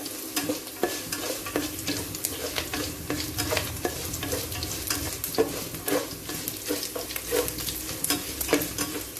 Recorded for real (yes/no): yes